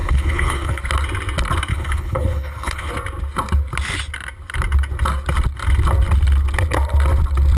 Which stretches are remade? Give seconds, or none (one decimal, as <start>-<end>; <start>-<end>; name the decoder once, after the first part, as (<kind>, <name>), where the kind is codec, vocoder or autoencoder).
0.0-0.8 (codec, HILCodec); 1.7-2.9